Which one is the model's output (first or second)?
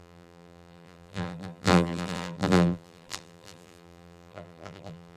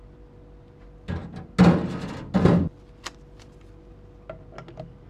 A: first